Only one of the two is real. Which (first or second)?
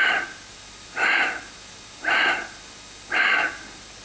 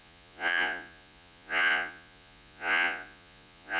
first